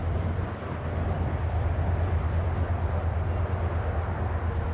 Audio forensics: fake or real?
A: real